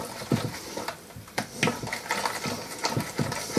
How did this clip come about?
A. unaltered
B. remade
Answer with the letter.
A